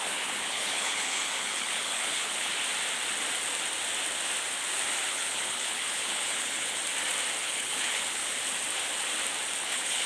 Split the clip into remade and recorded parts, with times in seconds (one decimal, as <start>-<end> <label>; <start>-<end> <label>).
0.0-2.5 remade; 2.5-5.1 recorded; 5.1-6.8 remade; 6.8-7.4 recorded; 7.4-8.2 remade; 8.2-9.6 recorded; 9.6-10.1 remade